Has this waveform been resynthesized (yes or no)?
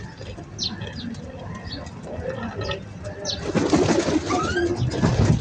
no